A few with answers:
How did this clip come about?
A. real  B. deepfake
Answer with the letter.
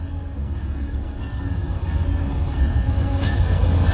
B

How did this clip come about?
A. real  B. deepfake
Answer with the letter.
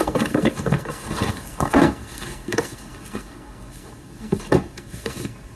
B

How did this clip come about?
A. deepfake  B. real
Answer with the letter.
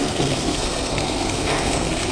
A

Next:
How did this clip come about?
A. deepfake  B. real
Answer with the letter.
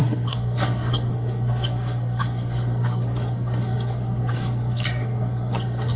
A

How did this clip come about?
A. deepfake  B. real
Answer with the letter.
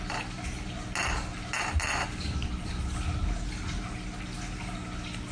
B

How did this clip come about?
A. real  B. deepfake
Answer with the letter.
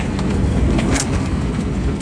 B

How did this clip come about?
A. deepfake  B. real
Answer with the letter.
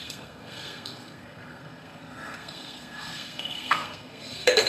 A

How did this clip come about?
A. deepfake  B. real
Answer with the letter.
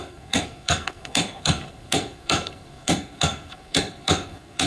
A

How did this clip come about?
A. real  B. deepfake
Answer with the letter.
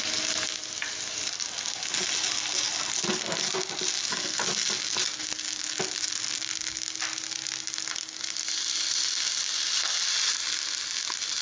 A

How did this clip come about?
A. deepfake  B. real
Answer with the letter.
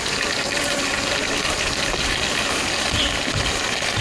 B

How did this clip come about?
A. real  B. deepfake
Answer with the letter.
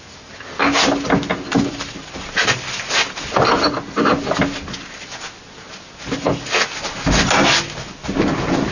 A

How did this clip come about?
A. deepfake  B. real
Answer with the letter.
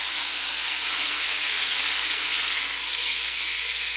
A